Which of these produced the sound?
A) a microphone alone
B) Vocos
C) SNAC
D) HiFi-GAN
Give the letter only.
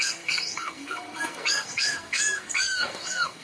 C